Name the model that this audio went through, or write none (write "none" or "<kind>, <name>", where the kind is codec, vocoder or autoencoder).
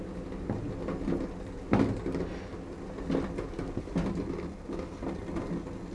none